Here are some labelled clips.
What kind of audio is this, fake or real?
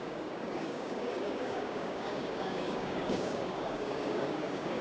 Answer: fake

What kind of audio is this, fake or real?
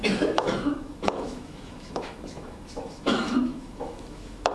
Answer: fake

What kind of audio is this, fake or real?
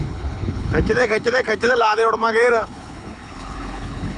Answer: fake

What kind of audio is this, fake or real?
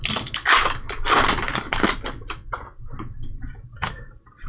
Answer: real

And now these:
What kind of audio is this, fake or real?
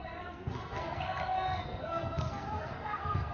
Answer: fake